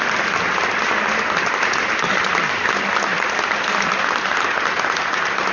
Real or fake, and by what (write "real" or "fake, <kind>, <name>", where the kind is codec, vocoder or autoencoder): real